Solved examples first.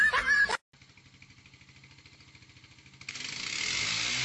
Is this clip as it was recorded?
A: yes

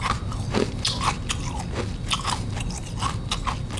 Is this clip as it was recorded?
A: yes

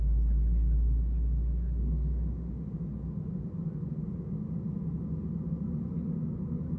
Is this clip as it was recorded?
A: yes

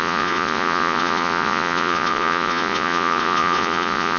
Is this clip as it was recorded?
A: no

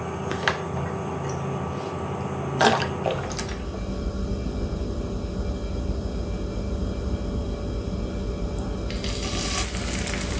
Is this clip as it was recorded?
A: yes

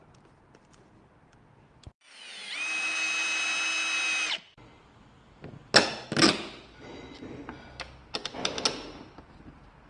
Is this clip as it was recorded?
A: yes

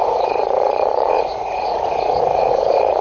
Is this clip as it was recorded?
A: no